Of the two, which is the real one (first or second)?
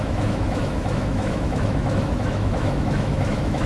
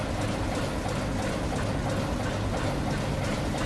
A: second